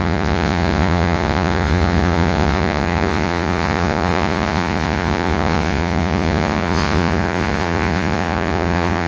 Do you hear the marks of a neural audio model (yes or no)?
yes